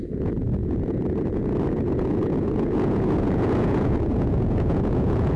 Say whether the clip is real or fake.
fake